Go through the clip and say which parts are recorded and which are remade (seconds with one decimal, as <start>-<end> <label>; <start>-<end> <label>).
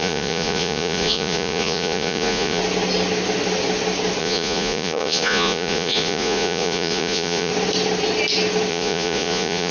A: 0.0-2.6 remade; 2.6-4.2 recorded; 4.2-7.5 remade; 7.5-8.7 recorded; 8.7-9.7 remade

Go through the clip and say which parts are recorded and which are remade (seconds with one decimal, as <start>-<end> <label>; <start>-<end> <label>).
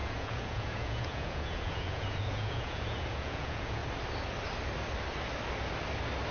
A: 0.0-3.8 remade; 3.8-6.3 recorded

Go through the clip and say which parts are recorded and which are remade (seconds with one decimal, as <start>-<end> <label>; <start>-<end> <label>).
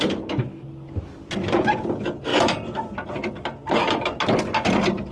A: 0.0-5.1 recorded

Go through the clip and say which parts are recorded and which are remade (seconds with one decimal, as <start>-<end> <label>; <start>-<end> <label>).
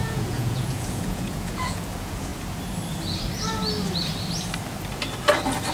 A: 0.0-2.3 remade; 2.3-5.7 recorded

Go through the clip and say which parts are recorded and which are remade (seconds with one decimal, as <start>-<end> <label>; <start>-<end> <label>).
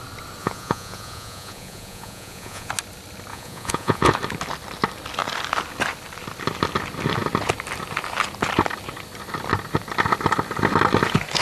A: 0.0-0.4 recorded; 0.4-2.7 remade; 2.7-3.3 recorded; 3.3-4.1 remade; 4.1-11.4 recorded